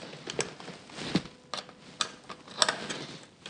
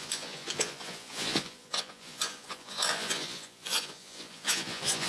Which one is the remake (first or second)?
second